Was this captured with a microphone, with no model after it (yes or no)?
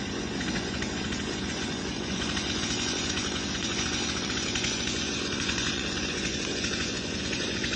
no